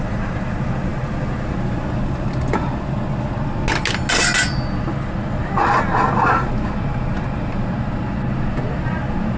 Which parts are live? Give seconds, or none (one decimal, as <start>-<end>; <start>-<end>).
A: 0.0-9.4